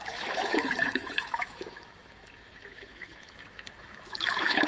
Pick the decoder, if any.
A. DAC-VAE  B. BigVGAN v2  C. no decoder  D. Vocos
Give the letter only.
A